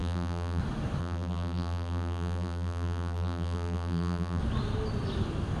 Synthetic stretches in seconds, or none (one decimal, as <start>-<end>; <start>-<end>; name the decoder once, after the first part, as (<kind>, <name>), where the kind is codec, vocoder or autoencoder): 0.0-0.6 (vocoder, BigVGAN v2); 1.0-4.4